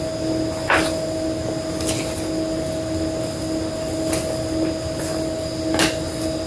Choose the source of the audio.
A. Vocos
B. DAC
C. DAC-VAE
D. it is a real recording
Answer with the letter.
D